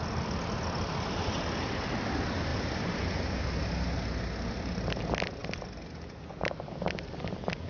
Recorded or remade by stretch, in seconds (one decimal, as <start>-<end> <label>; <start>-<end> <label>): 0.0-7.7 recorded